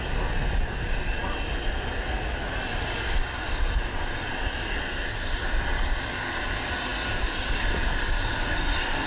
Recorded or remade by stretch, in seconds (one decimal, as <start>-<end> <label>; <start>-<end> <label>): 0.0-9.1 recorded